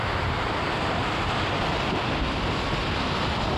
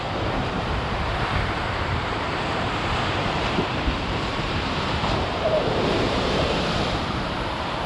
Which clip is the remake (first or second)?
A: second